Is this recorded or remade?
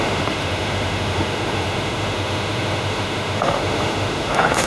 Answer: remade